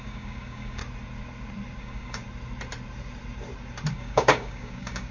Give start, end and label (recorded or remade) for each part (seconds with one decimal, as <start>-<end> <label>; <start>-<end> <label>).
0.0-0.8 remade; 0.8-1.8 recorded; 1.8-2.2 remade; 2.2-3.9 recorded; 3.9-5.1 remade